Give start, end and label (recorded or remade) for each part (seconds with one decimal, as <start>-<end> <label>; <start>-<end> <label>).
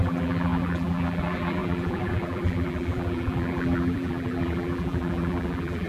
0.0-5.9 remade